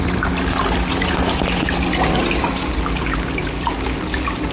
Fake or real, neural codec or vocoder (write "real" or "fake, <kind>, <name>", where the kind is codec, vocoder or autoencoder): real